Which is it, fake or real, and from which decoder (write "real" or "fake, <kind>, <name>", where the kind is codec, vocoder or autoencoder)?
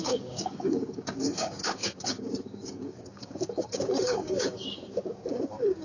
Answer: fake, codec, DAC